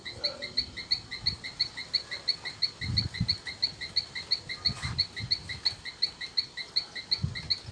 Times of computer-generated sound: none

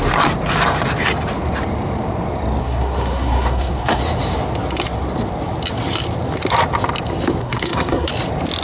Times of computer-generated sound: 2.6-4.0 (codec, SNAC); 7.4-8.1